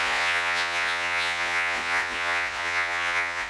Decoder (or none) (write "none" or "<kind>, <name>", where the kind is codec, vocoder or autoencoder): vocoder, Vocos